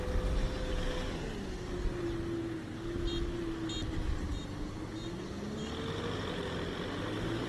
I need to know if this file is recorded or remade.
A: recorded